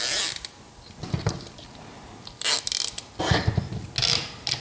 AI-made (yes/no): no